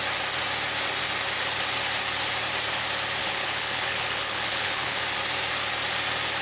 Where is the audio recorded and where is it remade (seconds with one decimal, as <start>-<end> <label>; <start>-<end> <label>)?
0.0-3.2 recorded; 3.2-5.0 remade; 5.0-6.4 recorded